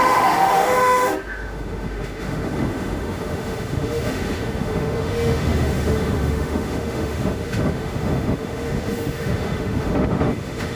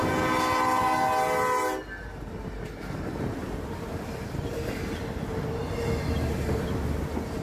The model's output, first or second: first